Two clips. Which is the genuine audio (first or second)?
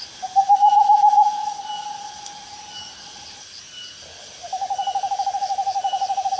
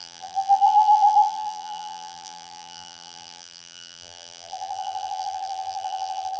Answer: first